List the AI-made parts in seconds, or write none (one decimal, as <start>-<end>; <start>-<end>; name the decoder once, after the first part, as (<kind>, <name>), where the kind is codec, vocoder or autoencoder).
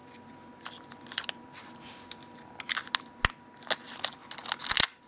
none